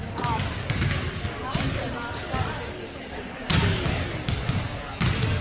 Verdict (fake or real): fake